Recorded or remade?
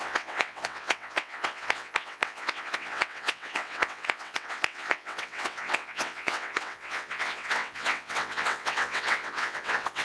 remade